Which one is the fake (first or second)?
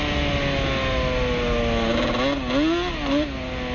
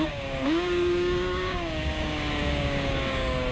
second